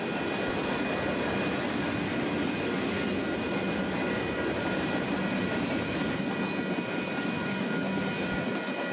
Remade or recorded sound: recorded